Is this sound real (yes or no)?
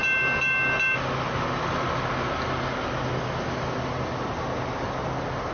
yes